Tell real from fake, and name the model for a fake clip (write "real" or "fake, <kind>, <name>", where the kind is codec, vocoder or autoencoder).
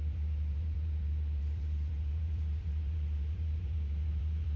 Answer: fake, vocoder, BigVGAN v2